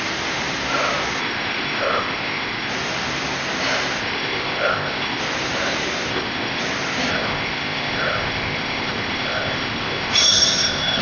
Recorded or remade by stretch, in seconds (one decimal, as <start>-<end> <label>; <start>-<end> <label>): 0.0-1.2 recorded; 1.2-2.7 remade; 2.7-4.0 recorded; 4.0-5.2 remade; 5.2-6.1 recorded; 6.1-6.6 remade; 6.6-7.1 recorded; 7.1-11.0 remade